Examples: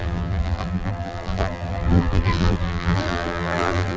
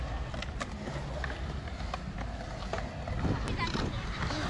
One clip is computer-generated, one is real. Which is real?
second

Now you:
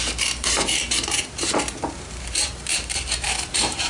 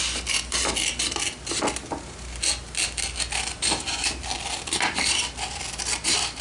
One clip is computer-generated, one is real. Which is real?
second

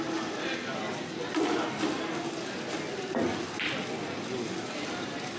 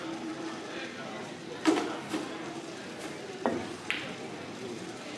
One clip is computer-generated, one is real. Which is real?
first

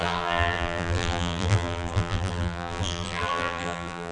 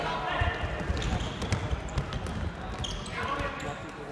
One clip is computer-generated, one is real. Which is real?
second